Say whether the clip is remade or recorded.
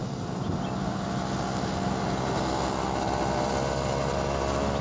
recorded